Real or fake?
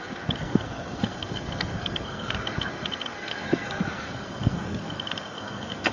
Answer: fake